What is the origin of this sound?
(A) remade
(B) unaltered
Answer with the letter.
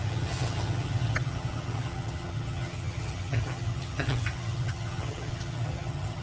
A